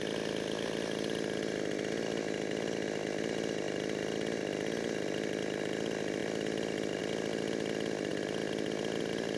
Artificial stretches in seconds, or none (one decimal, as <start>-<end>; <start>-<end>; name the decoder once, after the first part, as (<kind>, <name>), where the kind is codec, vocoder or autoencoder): none